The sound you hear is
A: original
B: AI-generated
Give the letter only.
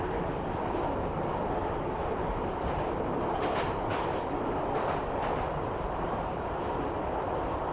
B